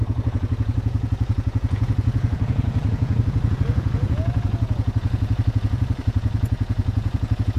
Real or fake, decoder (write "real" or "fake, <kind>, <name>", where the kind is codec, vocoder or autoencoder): fake, vocoder, Vocos